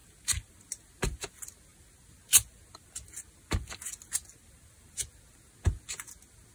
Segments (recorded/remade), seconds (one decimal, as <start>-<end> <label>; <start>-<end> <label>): 0.0-6.5 recorded